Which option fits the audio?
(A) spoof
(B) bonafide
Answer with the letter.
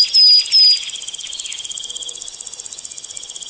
B